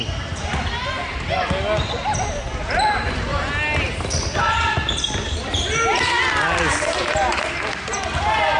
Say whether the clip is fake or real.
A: real